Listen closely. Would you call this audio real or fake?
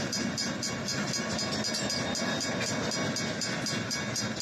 real